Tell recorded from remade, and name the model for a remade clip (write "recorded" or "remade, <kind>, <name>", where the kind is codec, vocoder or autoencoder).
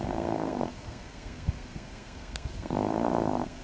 remade, codec, SNAC